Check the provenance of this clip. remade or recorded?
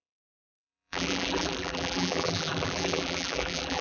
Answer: remade